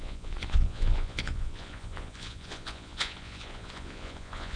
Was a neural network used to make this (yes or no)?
yes